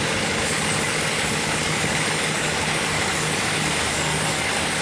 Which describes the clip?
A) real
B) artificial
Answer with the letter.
B